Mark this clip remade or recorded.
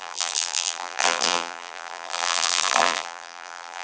remade